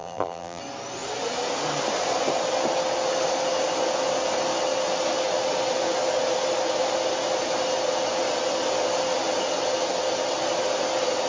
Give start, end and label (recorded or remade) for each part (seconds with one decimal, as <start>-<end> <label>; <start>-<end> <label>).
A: 0.0-0.6 remade; 0.6-11.3 recorded

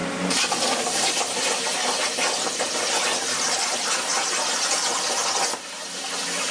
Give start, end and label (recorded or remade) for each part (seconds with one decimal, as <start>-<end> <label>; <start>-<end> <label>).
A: 0.0-1.2 remade; 1.2-6.5 recorded